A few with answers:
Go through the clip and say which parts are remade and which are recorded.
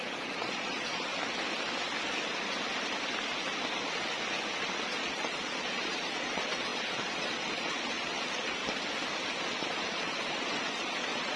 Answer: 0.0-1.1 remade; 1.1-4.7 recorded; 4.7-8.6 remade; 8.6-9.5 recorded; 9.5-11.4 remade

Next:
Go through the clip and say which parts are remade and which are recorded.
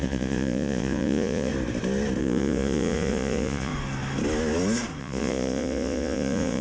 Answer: 0.0-1.5 remade; 1.5-2.2 recorded; 2.2-3.7 remade; 3.7-5.0 recorded; 5.0-6.6 remade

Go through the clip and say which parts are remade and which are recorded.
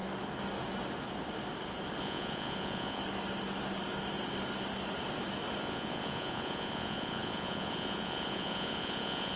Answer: 0.0-2.0 recorded; 2.0-3.0 remade; 3.0-5.6 recorded; 5.6-9.4 remade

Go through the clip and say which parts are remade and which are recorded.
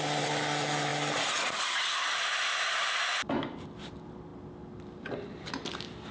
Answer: 0.0-6.1 recorded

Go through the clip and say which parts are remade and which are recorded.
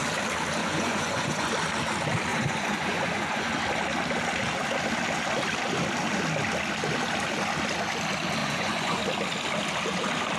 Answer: 0.0-0.6 recorded; 0.6-1.5 remade; 1.5-2.3 recorded; 2.3-3.5 remade; 3.5-8.4 recorded; 8.4-9.0 remade; 9.0-10.4 recorded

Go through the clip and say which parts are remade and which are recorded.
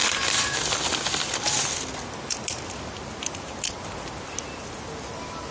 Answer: 0.0-5.5 recorded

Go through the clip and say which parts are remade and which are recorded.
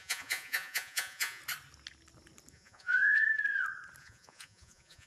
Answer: 0.0-1.4 remade; 1.4-2.5 recorded; 2.5-3.3 remade; 3.3-4.0 recorded; 4.0-5.1 remade